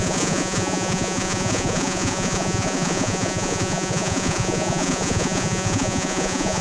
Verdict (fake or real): fake